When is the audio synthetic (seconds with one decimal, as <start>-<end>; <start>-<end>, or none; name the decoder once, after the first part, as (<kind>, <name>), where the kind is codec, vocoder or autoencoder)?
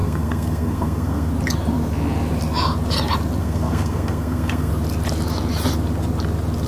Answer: 0.0-1.3 (codec, SNAC); 3.4-4.7